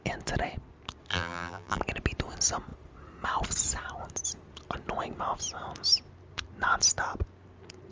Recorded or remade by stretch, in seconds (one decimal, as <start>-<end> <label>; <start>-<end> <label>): 0.0-1.1 recorded; 1.1-1.8 remade; 1.8-7.9 recorded